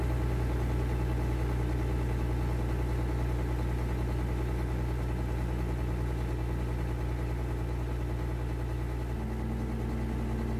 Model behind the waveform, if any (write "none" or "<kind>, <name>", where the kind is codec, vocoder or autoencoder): none